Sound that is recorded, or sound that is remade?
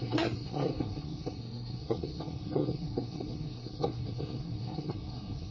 remade